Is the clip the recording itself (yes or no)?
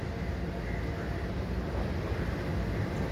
yes